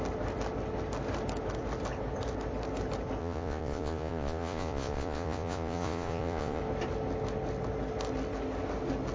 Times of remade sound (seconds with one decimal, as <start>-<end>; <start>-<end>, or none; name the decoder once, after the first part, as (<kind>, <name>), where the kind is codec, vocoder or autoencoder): 3.2-6.6 (vocoder, Vocos)